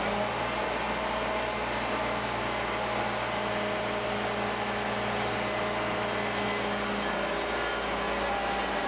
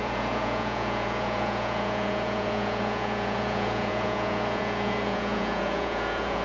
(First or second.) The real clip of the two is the first